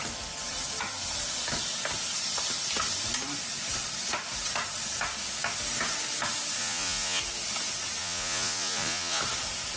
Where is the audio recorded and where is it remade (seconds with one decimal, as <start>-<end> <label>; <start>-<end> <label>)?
0.0-6.6 recorded; 6.6-7.2 remade; 7.2-8.0 recorded; 8.0-9.2 remade; 9.2-9.8 recorded